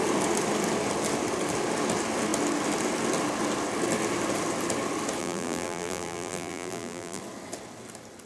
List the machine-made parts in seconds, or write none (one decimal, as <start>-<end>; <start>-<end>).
5.2-7.2

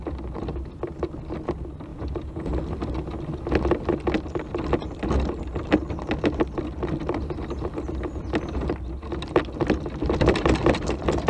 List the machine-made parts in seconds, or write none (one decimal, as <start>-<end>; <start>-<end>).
1.9-2.5